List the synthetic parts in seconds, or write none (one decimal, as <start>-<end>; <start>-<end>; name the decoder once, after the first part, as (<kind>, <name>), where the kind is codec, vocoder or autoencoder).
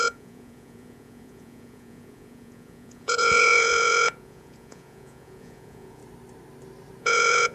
0.0-6.0 (vocoder, Vocos); 7.0-7.5